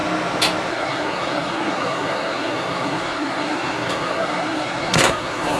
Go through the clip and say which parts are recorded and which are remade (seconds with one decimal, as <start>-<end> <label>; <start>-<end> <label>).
0.0-0.7 recorded; 0.7-5.6 remade